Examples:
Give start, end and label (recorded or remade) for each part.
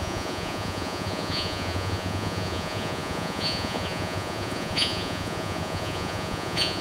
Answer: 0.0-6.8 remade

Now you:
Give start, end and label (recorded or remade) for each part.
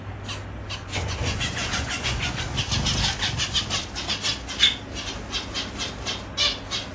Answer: 0.0-0.8 recorded; 0.8-2.4 remade; 2.4-6.9 recorded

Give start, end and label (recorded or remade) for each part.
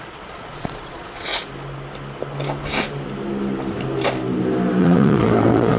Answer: 0.0-1.3 remade; 1.3-4.8 recorded; 4.8-5.8 remade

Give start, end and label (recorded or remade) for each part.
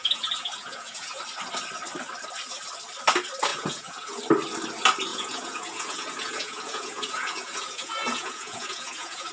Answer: 0.0-1.2 remade; 1.2-3.5 recorded; 3.5-4.2 remade; 4.2-5.1 recorded; 5.1-9.3 remade